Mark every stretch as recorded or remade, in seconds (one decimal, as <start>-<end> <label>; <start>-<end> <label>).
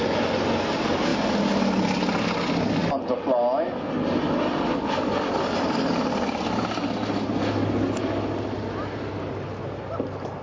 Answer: 0.0-10.4 recorded